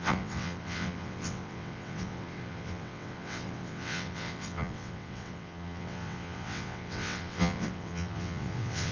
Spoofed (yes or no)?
yes